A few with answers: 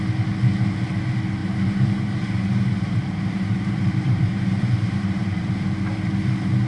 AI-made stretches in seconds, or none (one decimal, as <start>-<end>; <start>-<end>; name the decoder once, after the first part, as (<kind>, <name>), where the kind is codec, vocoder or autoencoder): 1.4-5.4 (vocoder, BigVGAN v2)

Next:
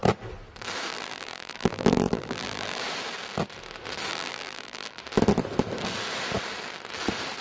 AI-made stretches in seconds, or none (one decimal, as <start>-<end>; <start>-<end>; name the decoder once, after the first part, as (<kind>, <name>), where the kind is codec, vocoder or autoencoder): 0.9-2.8 (vocoder, BigVGAN v2); 4.1-5.0

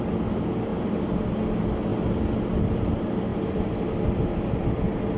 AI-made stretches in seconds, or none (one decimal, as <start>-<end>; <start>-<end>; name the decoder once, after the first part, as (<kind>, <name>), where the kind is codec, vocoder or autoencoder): 0.7-1.2 (vocoder, BigVGAN v2); 3.3-4.1

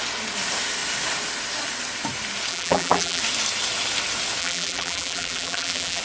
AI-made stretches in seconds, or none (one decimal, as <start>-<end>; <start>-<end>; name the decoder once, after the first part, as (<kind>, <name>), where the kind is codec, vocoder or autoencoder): 2.5-3.2 (vocoder, BigVGAN v2); 4.4-6.0

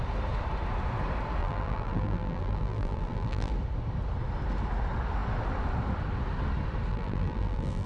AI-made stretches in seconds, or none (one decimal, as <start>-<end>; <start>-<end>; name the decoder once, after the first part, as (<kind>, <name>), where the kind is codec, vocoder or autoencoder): 1.4-3.5 (vocoder, BigVGAN v2); 6.9-7.9

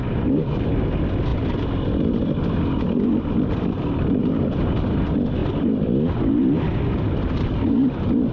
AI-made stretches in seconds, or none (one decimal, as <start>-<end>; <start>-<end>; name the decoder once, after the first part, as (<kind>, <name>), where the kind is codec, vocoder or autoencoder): 4.2-4.8 (vocoder, BigVGAN v2)